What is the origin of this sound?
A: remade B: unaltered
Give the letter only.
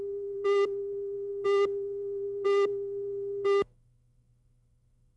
A